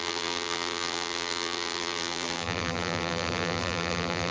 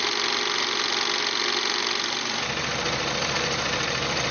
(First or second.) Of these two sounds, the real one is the second